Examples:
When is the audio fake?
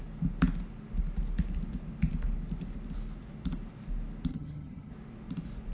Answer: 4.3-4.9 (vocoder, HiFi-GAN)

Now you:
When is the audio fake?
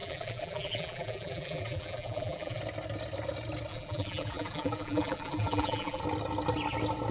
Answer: 0.0-2.6 (vocoder, BigVGAN v2); 3.7-6.0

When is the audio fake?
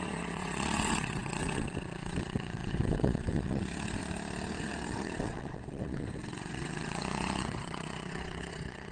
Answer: 0.0-4.0 (vocoder, WaveNeXt); 4.6-8.9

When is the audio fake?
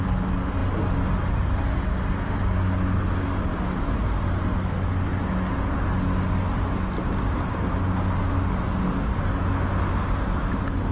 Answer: none